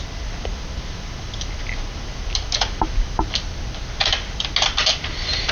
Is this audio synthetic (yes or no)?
no